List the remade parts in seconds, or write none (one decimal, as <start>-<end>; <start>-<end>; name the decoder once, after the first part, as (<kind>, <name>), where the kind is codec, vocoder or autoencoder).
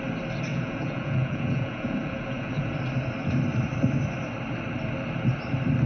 0.5-2.7 (vocoder, Vocos)